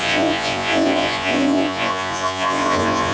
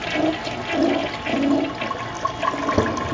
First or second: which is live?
second